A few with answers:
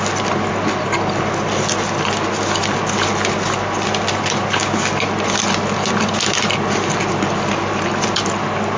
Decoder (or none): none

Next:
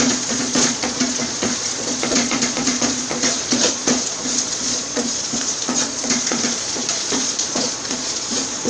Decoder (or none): vocoder, Vocos